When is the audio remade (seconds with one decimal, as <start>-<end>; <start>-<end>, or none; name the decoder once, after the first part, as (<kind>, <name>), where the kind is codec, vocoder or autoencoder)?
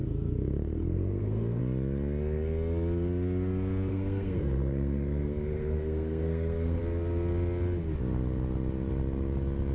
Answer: 0.0-1.6 (codec, SNAC); 3.9-6.8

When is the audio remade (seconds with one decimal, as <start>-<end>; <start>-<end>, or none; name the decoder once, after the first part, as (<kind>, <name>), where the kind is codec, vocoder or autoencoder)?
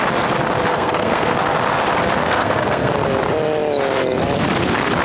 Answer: 0.7-1.4 (codec, SNAC); 2.2-2.9